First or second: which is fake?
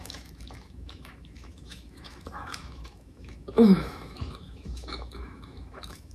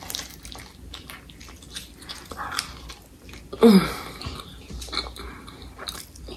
first